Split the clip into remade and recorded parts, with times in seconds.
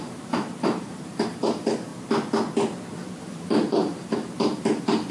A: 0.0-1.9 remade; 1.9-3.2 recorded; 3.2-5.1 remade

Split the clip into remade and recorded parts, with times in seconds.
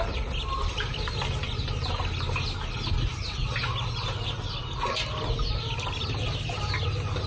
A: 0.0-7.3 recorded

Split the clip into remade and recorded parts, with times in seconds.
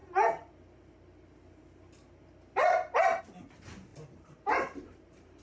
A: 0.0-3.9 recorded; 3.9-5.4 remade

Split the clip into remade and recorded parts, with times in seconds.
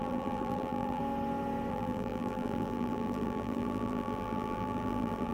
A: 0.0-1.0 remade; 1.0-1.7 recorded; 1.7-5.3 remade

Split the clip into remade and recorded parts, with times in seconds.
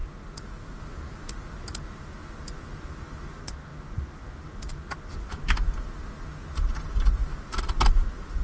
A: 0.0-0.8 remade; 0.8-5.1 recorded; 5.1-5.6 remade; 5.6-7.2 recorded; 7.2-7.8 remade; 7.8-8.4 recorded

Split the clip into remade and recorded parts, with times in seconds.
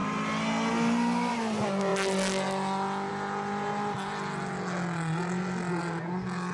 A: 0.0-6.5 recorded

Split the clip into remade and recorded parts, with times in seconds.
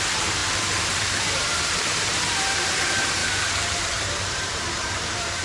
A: 0.0-3.2 remade; 3.2-3.8 recorded; 3.8-5.4 remade